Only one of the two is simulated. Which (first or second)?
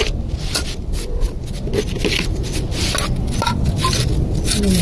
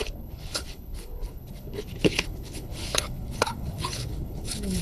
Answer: second